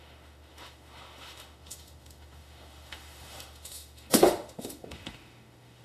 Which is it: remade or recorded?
remade